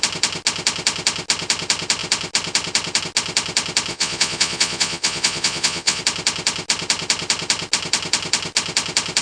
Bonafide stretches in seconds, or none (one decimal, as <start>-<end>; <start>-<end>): 0.0-3.9; 6.0-9.2